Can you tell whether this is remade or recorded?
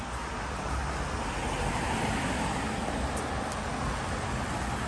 recorded